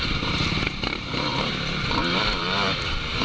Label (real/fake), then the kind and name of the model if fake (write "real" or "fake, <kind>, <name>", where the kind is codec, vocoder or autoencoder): fake, vocoder, BigVGAN v2